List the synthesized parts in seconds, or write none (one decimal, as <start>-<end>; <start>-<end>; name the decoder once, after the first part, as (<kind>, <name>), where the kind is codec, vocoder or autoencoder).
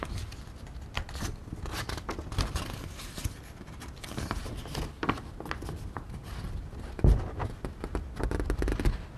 none